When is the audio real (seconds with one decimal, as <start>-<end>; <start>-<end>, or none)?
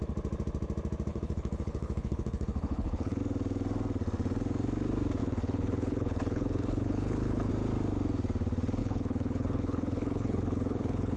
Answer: 0.0-1.1; 3.2-5.2; 7.5-8.8